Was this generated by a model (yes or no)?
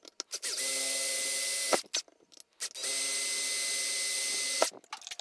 no